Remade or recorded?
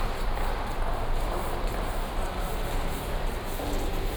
recorded